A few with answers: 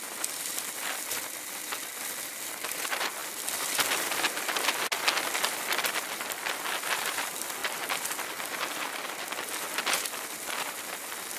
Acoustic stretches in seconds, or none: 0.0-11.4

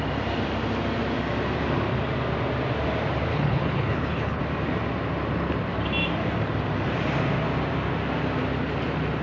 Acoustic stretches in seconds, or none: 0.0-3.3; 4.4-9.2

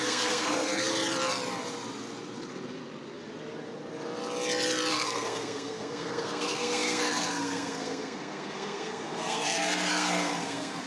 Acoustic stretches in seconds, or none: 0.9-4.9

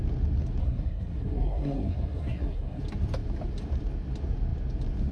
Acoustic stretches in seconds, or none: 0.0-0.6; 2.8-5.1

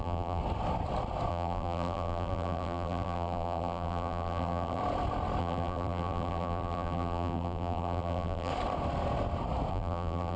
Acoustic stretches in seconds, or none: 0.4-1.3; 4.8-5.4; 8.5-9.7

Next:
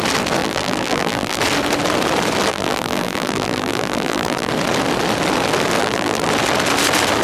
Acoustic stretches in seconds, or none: 0.0-0.4; 1.4-2.5; 4.5-5.8; 6.3-7.2